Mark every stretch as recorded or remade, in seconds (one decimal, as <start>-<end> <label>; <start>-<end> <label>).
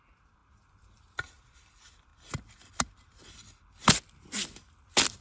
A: 0.0-2.1 remade; 2.1-5.2 recorded